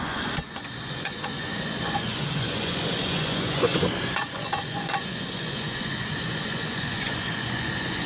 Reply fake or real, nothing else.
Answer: fake